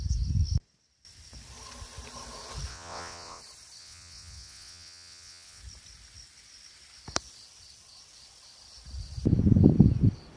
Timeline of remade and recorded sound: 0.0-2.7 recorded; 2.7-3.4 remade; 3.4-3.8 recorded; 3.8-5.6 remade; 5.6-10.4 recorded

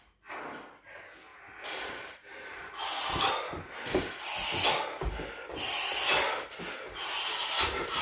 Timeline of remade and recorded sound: 0.0-1.3 recorded; 1.3-3.3 remade; 3.3-7.4 recorded; 7.4-8.0 remade

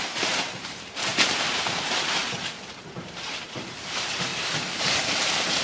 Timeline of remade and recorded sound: 0.0-2.2 remade; 2.2-3.0 recorded; 3.0-4.3 remade; 4.3-4.8 recorded; 4.8-5.6 remade

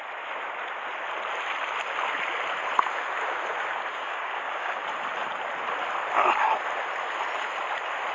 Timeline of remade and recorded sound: 0.0-3.9 recorded; 3.9-4.8 remade; 4.8-8.1 recorded